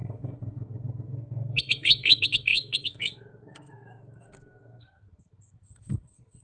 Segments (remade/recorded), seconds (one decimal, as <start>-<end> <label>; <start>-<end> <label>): 0.0-6.4 remade